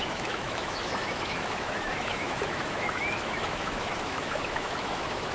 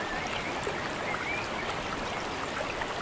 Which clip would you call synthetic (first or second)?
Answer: first